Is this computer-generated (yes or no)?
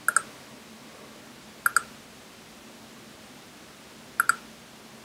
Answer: no